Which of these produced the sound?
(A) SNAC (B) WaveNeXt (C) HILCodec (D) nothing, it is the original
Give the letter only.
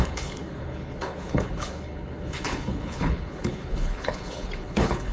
C